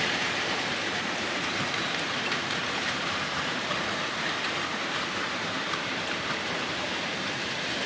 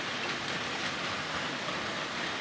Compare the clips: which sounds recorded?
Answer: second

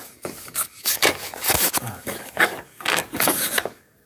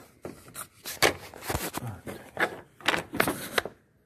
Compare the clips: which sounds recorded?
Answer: second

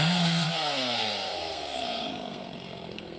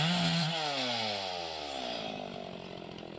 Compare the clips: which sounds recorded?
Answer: second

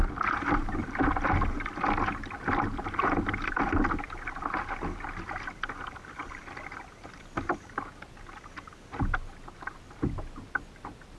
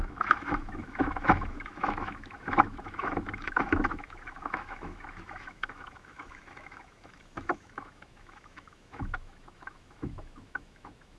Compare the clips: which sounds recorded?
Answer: first